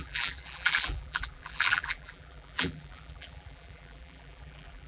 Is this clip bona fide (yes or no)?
no